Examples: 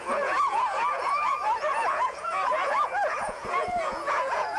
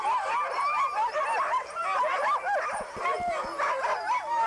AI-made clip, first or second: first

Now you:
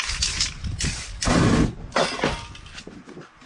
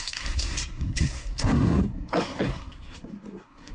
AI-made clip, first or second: second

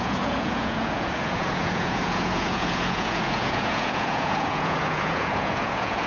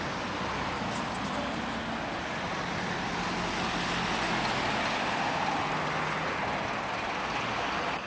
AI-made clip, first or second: first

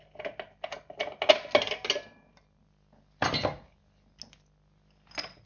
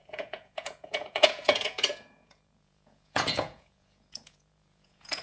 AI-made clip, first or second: second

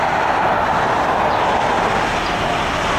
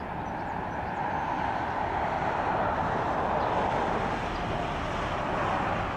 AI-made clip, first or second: second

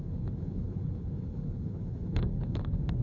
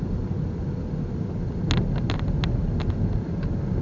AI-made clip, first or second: first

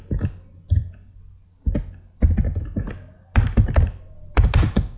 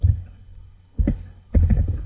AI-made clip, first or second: second